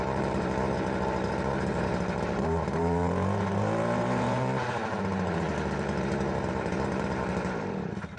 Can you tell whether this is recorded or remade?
remade